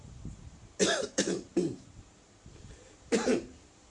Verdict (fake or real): fake